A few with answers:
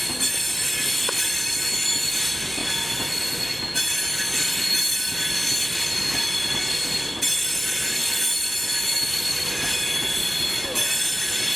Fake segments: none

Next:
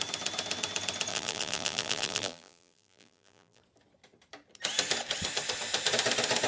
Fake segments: 1.1-3.6

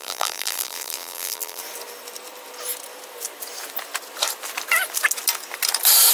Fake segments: 0.0-1.6

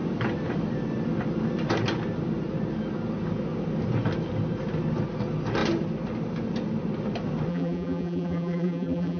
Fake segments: 7.5-9.2

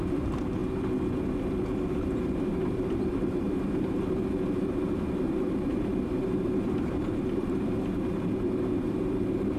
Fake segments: 0.0-0.6; 2.4-9.6

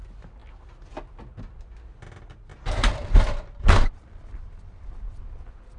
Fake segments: 2.5-5.2

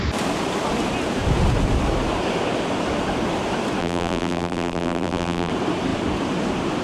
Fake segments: 3.8-5.5